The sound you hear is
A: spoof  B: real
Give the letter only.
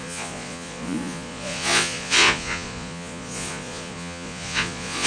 A